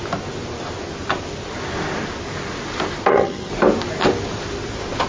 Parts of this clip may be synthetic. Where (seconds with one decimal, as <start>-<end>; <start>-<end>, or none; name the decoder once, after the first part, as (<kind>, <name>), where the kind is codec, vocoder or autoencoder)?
3.1-3.5 (vocoder, HiFi-GAN)